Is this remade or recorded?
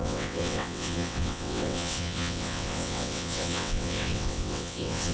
remade